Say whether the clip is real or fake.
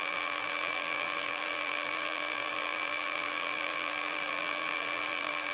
fake